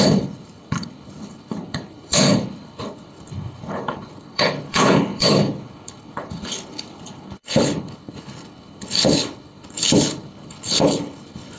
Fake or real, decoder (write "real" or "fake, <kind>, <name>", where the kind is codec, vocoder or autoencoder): fake, codec, HILCodec